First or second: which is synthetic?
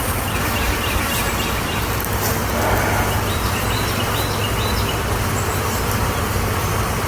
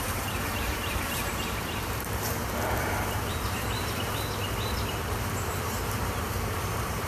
second